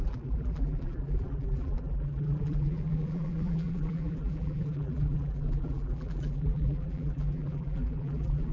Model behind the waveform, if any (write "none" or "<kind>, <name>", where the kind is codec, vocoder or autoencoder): vocoder, BigVGAN v2